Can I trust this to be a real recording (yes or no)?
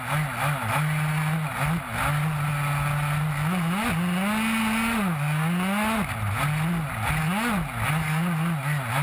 yes